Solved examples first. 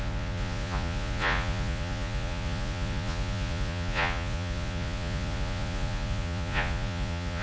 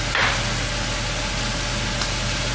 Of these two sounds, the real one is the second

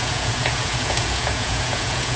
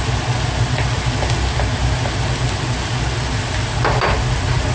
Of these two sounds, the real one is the second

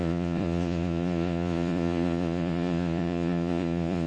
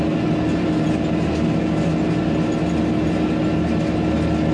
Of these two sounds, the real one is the second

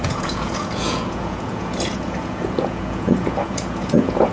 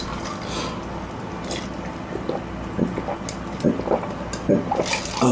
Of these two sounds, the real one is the second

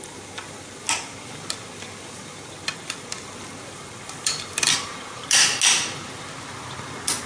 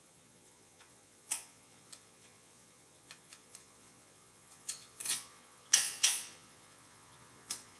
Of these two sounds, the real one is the first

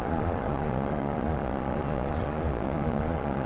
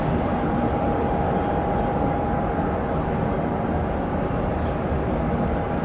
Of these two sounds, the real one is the second